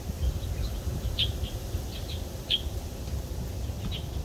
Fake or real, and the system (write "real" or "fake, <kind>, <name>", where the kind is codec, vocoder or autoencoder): real